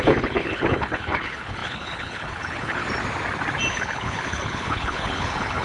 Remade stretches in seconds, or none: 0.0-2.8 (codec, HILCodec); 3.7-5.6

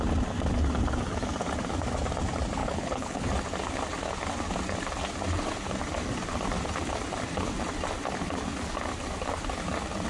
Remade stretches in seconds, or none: 2.6-3.3 (codec, HILCodec)

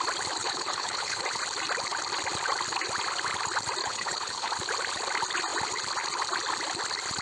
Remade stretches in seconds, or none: 0.4-1.2 (codec, HILCodec); 3.8-4.5

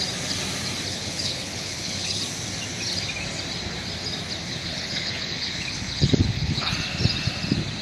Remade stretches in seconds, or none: 0.9-2.2 (codec, HILCodec); 4.5-6.7

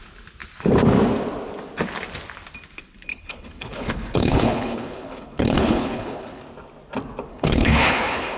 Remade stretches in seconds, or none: 3.1-6.4 (codec, HILCodec); 7.3-8.4